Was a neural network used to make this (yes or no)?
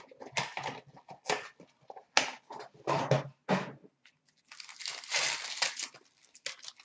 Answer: no